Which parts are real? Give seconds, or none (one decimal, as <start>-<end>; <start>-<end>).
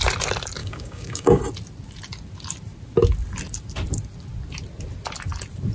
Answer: 0.0-0.6; 1.4-5.7